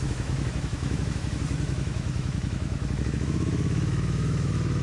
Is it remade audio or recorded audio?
remade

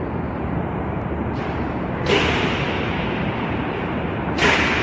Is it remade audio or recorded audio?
remade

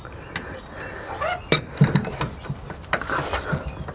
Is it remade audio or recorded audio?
recorded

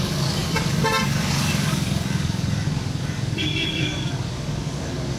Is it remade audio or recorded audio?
remade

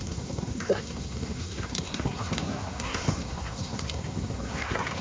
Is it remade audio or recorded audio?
remade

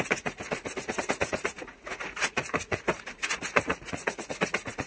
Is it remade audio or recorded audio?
remade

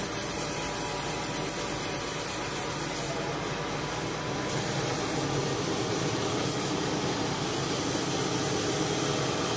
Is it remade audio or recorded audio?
recorded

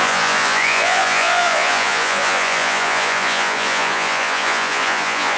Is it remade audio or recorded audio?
remade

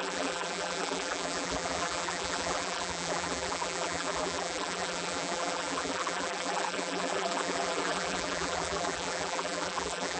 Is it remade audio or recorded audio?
remade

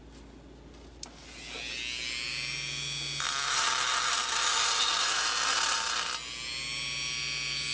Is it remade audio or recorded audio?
recorded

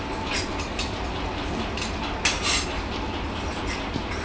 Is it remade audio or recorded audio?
recorded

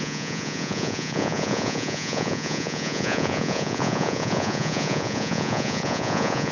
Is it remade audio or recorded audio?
remade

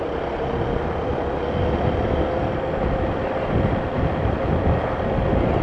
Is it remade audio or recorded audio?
recorded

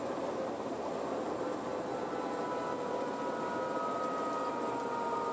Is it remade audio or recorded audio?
recorded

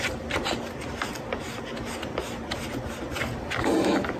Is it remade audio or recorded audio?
recorded